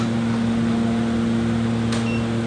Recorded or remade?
recorded